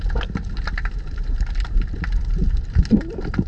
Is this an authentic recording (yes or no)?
yes